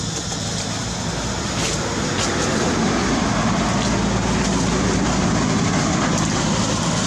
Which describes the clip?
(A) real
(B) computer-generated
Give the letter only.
A